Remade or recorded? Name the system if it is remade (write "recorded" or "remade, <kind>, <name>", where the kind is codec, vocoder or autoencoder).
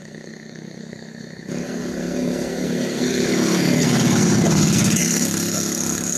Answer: remade, codec, SNAC